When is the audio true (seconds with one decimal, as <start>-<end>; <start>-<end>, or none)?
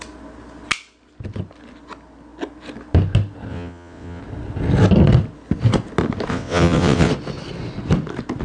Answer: 0.0-3.5; 4.2-6.3; 7.1-8.4